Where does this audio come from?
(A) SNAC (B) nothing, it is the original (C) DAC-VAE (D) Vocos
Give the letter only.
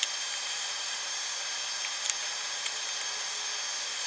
B